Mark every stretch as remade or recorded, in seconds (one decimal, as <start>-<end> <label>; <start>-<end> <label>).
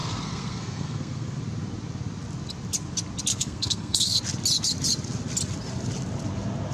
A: 0.0-1.4 remade; 1.4-3.3 recorded; 3.3-4.2 remade; 4.2-6.7 recorded